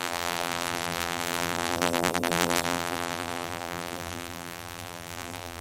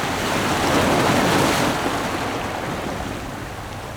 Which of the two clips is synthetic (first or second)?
first